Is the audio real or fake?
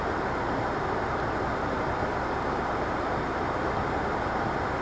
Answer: real